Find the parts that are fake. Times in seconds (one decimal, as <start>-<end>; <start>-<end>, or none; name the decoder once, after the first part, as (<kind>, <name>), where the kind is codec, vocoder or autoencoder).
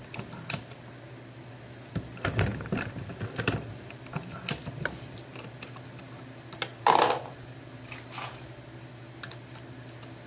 6.7-8.5 (vocoder, BigVGAN v2)